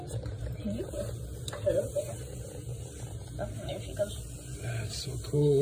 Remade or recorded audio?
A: remade